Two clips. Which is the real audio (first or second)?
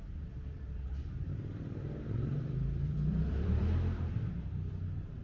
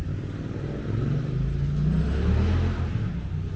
second